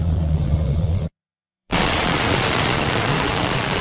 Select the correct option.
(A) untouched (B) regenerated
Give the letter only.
B